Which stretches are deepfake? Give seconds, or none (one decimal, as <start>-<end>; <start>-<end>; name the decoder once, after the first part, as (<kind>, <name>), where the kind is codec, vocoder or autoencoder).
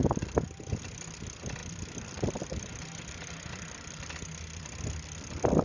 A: 1.6-4.8 (vocoder, BigVGAN v2)